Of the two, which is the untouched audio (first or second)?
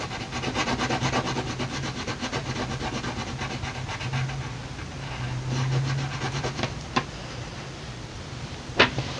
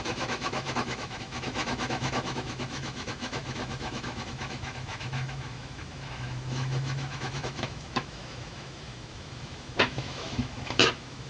first